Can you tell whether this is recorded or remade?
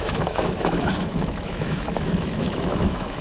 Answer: remade